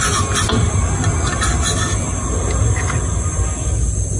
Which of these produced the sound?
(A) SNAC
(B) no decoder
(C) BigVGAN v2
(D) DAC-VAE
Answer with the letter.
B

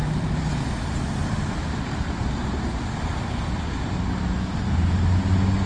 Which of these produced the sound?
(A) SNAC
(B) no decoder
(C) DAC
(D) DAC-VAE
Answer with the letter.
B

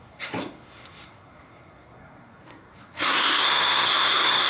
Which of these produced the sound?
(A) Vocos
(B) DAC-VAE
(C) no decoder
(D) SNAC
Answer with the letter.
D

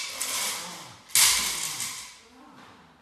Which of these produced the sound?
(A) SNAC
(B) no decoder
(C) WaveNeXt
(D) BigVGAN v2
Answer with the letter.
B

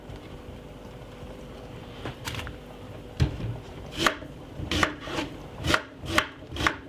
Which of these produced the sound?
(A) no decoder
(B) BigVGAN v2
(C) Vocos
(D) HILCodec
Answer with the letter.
B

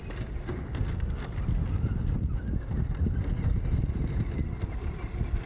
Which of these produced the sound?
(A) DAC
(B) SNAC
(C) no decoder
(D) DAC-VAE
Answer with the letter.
C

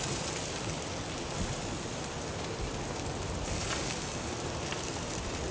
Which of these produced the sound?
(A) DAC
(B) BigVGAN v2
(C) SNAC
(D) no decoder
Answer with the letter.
B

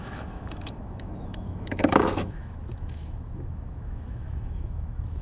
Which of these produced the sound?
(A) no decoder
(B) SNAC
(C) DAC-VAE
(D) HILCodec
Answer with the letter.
C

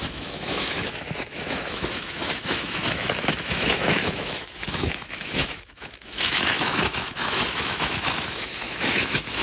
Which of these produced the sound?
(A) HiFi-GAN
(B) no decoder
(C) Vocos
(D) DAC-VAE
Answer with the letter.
D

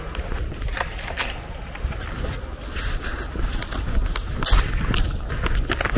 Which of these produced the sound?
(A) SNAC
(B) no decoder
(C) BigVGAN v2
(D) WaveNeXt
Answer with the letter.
B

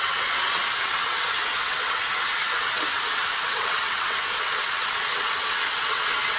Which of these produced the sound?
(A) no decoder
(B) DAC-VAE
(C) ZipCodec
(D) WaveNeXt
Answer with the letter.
D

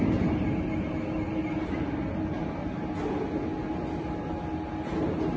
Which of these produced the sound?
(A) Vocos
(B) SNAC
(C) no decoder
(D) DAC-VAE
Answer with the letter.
C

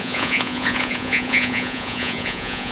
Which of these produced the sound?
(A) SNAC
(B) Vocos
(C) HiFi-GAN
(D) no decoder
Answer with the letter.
B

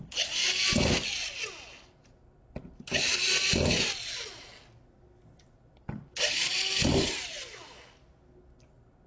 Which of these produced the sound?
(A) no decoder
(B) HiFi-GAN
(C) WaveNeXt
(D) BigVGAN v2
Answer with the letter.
A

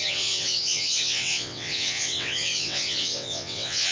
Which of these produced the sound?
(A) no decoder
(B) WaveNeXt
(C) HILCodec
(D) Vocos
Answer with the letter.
B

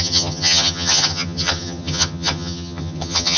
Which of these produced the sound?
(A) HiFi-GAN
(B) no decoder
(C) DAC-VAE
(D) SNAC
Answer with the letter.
A